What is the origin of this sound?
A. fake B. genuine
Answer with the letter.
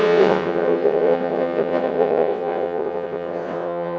A